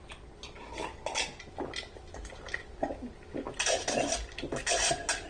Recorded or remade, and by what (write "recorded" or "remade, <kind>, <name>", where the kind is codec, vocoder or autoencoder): recorded